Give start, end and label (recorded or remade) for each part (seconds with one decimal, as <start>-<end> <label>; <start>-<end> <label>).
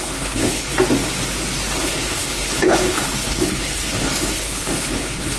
0.0-0.7 remade; 0.7-1.8 recorded; 1.8-5.4 remade